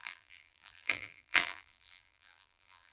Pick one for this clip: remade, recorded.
remade